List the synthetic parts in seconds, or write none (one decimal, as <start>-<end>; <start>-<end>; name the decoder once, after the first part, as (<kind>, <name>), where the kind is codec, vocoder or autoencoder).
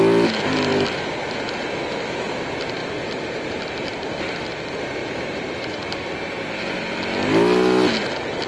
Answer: 5.0-6.6 (vocoder, BigVGAN v2)